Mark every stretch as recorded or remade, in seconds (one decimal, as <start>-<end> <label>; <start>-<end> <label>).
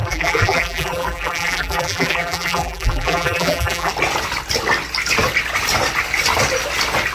0.0-3.9 remade; 3.9-7.1 recorded